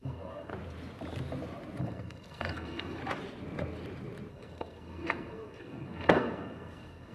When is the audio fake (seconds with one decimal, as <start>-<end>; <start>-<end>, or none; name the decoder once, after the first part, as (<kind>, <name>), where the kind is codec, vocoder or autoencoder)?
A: 0.0-0.5 (codec, SNAC); 1.8-3.0; 4.3-7.1